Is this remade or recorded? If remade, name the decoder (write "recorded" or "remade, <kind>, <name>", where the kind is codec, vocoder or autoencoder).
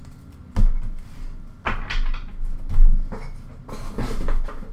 recorded